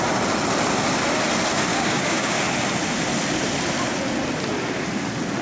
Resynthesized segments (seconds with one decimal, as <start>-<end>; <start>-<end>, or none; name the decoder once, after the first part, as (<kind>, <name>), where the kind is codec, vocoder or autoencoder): 1.7-2.4 (codec, DAC)

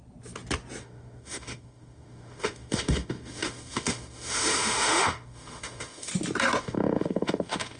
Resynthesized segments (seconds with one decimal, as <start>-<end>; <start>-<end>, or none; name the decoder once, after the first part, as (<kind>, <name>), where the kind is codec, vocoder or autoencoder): 0.8-6.1 (autoencoder, DAC-VAE); 6.6-7.8

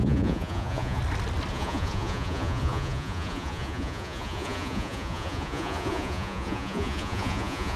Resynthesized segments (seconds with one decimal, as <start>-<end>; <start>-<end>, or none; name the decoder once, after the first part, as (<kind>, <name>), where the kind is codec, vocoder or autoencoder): 0.0-1.0 (vocoder, Vocos); 1.5-7.8

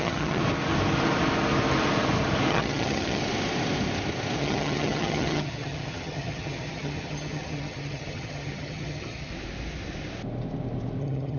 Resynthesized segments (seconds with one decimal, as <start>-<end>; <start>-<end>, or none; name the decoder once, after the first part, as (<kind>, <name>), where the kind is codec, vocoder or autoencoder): 0.0-0.4 (vocoder, HiFi-GAN); 2.5-3.2; 4.4-9.3; 11.0-11.4

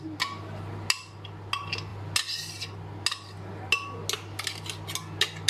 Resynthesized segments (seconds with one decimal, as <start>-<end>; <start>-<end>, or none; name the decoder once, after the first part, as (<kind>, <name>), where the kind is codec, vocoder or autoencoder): none

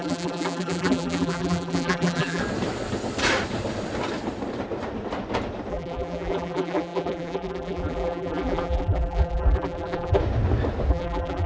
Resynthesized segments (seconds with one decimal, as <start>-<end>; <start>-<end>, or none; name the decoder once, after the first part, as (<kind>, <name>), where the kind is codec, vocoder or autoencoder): 0.0-2.4 (vocoder, BigVGAN v2); 5.7-10.2; 10.9-11.5

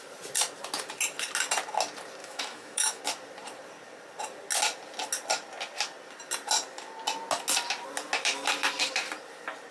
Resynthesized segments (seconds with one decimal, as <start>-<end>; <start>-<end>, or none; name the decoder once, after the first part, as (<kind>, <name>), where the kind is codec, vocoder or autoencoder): 2.2-3.0 (autoencoder, DAC-VAE)